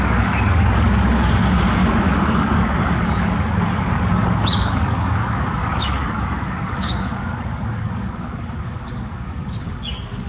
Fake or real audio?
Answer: fake